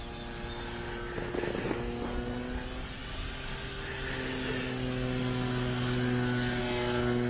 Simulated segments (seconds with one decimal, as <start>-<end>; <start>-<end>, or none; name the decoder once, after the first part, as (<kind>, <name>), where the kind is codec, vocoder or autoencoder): none

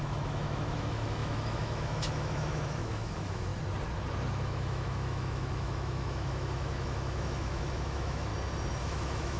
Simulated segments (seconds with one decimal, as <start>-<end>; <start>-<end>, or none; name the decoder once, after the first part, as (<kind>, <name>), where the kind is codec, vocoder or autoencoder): 0.0-3.5 (autoencoder, DAC-VAE); 4.3-8.3; 8.8-9.4

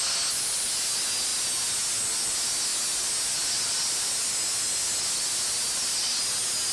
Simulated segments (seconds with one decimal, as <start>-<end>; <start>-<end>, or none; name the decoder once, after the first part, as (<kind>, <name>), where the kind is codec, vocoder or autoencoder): none